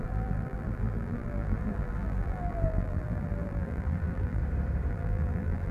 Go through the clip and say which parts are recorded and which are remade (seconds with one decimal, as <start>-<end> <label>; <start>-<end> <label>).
0.0-4.4 remade; 4.4-4.9 recorded; 4.9-5.7 remade